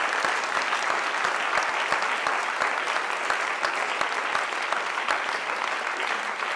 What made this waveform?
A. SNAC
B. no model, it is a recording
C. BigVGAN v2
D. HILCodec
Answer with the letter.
B